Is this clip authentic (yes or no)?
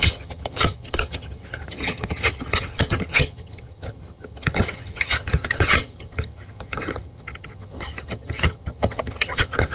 no